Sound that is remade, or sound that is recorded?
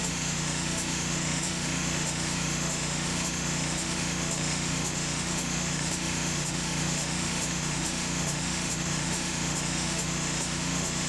remade